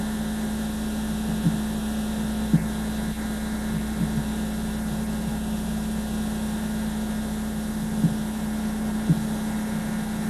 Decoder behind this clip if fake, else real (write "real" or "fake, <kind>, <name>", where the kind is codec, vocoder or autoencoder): real